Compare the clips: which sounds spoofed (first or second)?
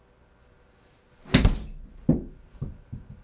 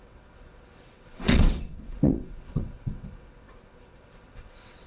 second